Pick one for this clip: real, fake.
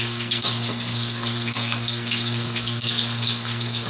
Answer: fake